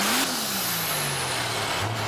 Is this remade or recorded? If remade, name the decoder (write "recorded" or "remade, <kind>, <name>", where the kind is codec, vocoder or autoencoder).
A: recorded